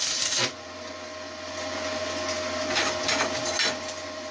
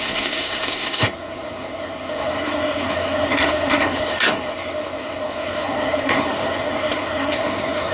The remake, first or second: second